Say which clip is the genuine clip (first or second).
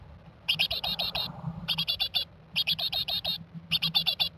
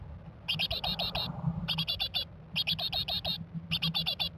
second